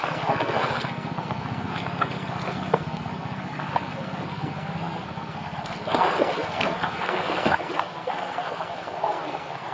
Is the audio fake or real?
fake